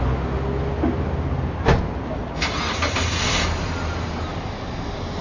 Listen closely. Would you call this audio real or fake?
real